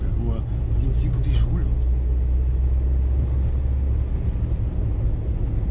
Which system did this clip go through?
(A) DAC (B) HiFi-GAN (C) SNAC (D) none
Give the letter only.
D